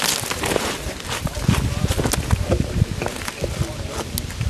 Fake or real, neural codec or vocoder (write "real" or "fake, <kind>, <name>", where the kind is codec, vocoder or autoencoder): real